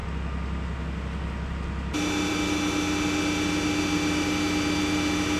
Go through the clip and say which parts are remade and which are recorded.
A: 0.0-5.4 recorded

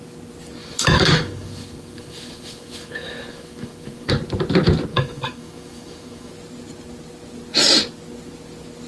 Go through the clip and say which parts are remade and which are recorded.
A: 0.0-0.6 recorded; 0.6-4.1 remade; 4.1-4.9 recorded; 4.9-6.3 remade; 6.3-8.9 recorded

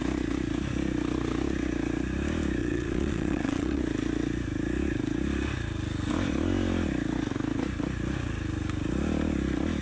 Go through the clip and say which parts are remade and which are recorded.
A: 0.0-2.6 recorded; 2.6-3.8 remade; 3.8-9.8 recorded

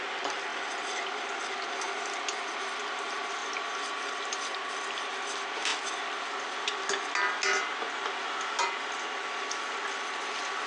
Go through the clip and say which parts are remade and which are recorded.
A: 0.0-10.7 recorded

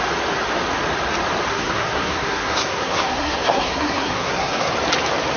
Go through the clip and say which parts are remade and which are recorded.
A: 0.0-1.5 recorded; 1.5-4.7 remade; 4.7-5.4 recorded

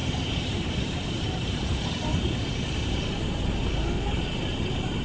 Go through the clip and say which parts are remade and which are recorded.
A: 0.0-3.0 remade; 3.0-5.0 recorded

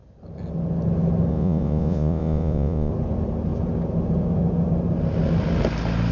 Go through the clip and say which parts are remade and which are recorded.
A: 0.0-1.3 recorded; 1.3-2.9 remade; 2.9-6.1 recorded